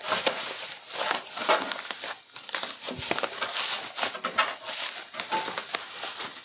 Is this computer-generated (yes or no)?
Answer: no